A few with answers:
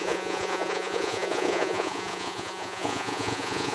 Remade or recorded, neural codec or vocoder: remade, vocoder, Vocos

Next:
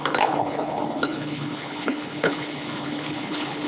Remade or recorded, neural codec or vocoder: remade, codec, HILCodec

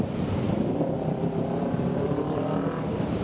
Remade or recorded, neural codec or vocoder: remade, vocoder, BigVGAN v2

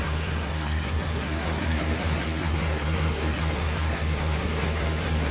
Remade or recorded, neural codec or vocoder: remade, codec, SNAC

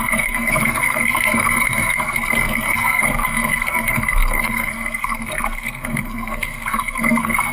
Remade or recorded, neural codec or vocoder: remade, codec, SNAC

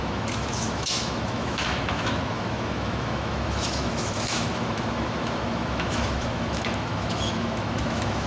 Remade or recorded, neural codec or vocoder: remade, autoencoder, DAC-VAE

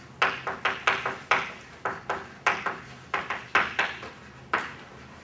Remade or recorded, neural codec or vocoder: recorded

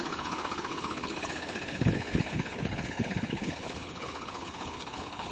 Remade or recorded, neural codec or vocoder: remade, codec, HILCodec